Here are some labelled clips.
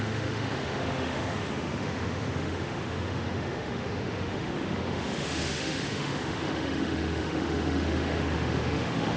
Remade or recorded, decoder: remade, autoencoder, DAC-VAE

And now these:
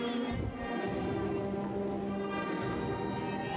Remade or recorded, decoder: recorded